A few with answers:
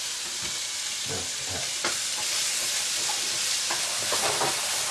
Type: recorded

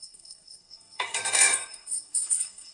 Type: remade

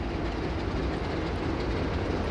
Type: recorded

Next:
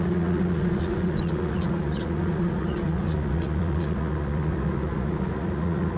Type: remade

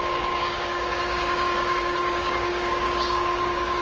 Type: remade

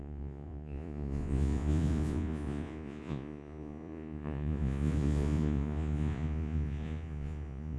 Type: remade